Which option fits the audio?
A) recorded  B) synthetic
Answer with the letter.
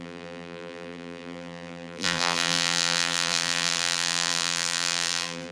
B